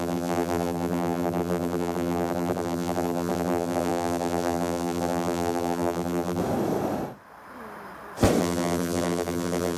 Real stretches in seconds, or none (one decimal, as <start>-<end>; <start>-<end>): 6.4-8.4